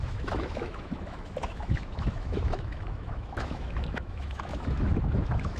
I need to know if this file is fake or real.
fake